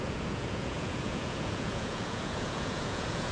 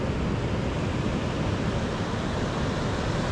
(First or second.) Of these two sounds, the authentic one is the second